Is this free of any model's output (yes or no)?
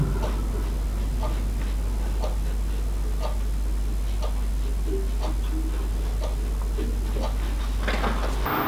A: yes